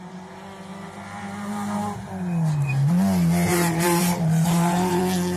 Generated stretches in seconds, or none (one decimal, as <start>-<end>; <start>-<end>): 0.7-2.1; 3.5-5.0